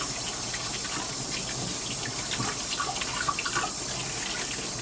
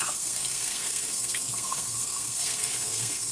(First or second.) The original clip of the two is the first